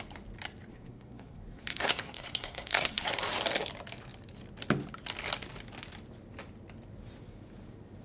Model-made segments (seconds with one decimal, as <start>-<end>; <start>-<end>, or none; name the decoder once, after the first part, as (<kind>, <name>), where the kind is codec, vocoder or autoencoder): 0.7-3.1 (codec, SNAC)